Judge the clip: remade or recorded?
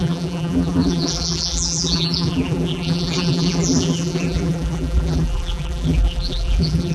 remade